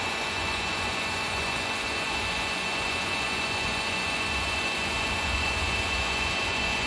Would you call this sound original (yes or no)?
no